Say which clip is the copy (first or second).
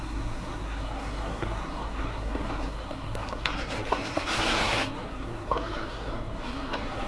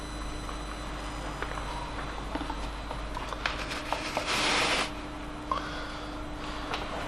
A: first